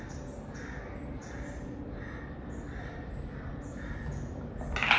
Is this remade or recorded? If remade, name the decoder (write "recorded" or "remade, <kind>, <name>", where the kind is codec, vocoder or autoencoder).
recorded